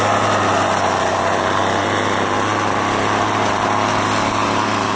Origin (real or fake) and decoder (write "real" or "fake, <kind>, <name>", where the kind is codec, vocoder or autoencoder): real